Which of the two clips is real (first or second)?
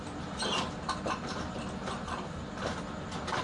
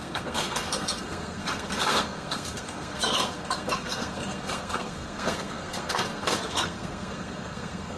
first